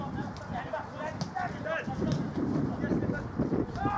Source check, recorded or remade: recorded